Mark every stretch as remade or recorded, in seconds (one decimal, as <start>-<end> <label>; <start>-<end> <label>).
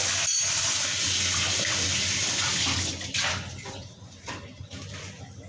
0.0-5.5 recorded